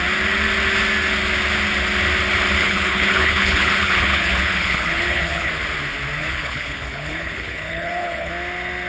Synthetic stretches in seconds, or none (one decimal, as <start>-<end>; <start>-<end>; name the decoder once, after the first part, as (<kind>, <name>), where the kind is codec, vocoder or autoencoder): 2.6-5.5 (codec, HILCodec); 6.2-8.3